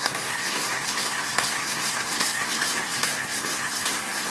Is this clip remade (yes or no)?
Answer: yes